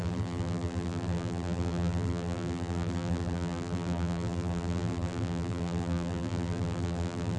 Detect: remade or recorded remade